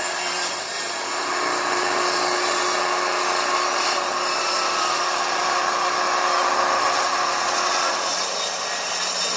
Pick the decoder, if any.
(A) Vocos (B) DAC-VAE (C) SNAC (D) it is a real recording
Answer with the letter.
D